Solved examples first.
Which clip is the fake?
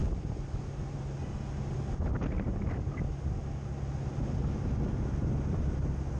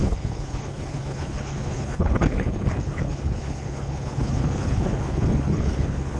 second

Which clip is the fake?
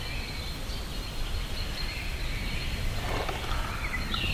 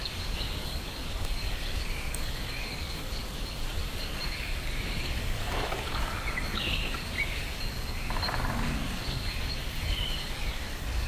second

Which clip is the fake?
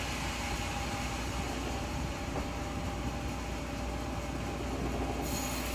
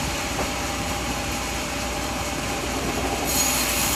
second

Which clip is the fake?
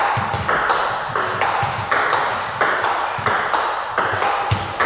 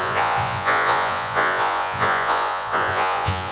second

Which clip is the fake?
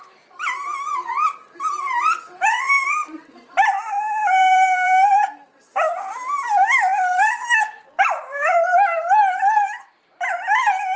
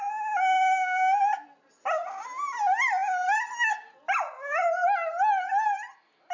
first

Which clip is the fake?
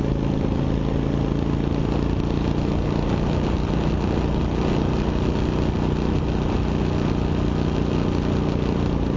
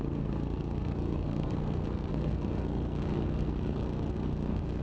second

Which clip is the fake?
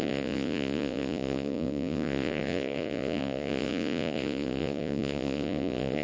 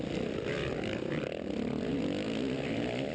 first